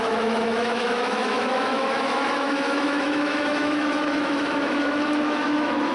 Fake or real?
fake